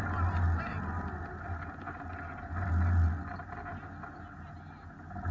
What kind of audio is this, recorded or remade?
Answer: recorded